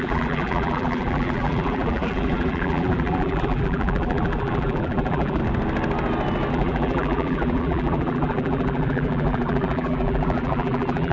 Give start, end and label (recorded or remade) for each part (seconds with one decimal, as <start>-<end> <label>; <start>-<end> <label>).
0.0-5.4 remade; 5.4-6.5 recorded; 6.5-11.1 remade